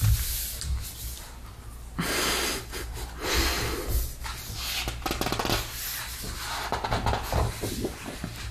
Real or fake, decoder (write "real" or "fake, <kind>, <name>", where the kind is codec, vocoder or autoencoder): real